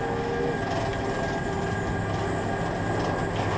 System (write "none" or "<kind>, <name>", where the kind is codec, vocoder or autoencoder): none